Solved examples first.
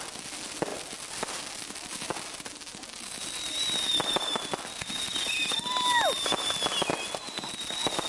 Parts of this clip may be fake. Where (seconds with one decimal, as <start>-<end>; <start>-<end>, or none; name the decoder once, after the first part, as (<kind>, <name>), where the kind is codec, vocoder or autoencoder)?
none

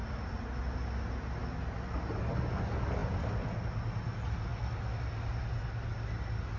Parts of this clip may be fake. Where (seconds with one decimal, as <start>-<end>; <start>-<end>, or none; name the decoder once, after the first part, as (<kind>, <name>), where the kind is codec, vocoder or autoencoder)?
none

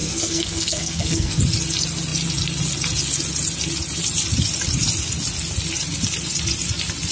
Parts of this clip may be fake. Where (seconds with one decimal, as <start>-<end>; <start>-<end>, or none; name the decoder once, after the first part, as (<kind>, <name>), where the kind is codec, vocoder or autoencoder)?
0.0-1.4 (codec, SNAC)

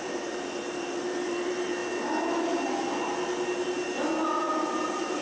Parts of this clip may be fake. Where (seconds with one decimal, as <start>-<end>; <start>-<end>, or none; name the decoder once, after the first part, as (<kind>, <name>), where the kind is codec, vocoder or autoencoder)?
0.0-1.8 (vocoder, BigVGAN v2); 4.4-5.2

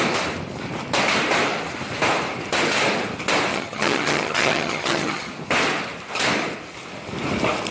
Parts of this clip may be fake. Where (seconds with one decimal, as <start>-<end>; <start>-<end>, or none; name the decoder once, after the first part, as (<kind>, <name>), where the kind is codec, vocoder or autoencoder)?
3.5-5.3 (vocoder, HiFi-GAN)

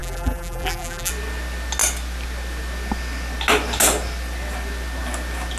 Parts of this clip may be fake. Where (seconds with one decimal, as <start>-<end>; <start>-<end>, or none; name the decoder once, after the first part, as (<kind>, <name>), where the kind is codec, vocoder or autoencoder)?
0.0-1.1 (vocoder, BigVGAN v2)

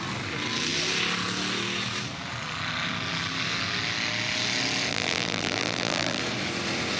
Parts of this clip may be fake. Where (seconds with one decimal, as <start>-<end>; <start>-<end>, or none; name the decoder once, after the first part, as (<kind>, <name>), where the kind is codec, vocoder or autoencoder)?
4.9-6.2 (vocoder, BigVGAN v2)

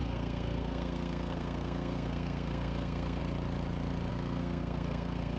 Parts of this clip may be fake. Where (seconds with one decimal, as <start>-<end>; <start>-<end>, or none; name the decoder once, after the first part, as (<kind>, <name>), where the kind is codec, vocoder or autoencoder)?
0.0-3.2 (codec, SNAC); 4.1-5.4